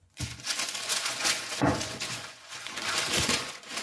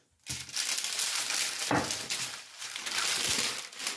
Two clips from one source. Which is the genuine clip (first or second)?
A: second